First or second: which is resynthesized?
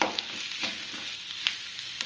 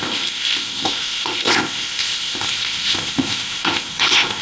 second